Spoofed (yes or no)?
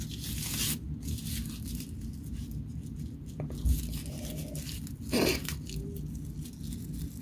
no